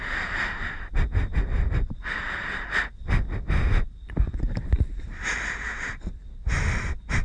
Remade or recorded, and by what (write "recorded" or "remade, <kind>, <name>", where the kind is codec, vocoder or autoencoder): recorded